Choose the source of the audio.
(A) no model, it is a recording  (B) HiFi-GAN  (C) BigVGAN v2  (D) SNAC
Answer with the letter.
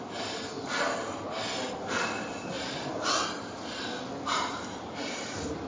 A